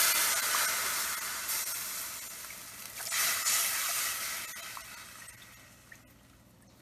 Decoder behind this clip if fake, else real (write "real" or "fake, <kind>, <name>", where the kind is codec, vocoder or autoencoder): real